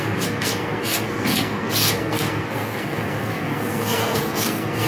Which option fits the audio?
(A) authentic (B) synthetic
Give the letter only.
B